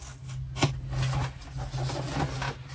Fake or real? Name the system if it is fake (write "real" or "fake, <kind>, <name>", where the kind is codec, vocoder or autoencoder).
real